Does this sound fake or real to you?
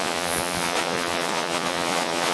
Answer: fake